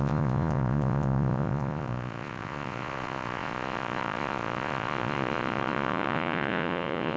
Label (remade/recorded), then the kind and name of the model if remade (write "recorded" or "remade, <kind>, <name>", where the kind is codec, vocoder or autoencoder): remade, vocoder, Vocos